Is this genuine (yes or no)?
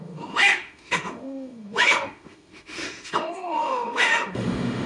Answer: no